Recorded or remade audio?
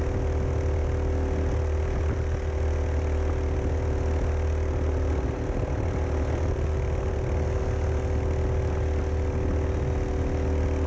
recorded